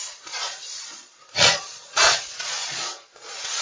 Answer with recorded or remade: remade